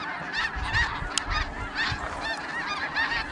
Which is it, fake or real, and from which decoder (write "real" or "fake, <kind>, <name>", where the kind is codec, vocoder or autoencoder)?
real